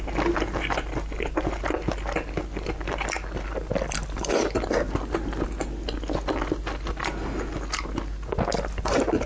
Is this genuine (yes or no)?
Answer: yes